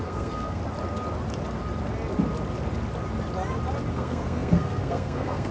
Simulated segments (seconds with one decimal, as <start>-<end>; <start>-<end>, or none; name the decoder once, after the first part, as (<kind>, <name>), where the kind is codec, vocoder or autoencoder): 0.0-0.6 (codec, SNAC); 3.9-5.5